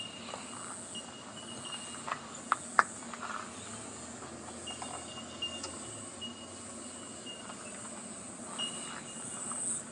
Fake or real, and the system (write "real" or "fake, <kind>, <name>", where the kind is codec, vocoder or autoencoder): real